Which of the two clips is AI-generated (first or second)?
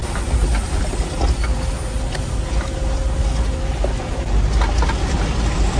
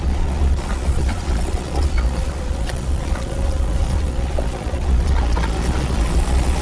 second